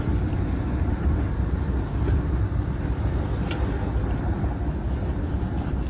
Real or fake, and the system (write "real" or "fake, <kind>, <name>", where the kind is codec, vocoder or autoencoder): real